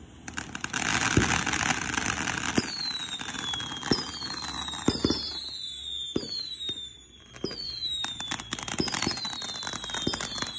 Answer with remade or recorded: recorded